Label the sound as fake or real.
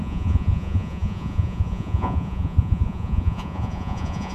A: fake